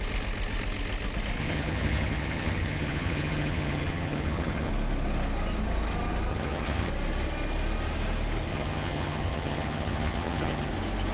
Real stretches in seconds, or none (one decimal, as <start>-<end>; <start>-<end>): 0.0-1.4; 4.7-6.3; 6.9-8.5; 10.7-11.1